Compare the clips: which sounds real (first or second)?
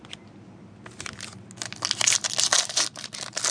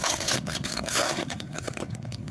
first